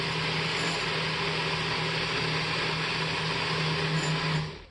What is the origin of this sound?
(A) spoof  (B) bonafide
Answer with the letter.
B